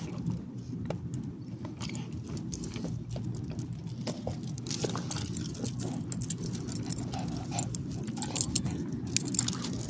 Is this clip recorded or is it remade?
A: recorded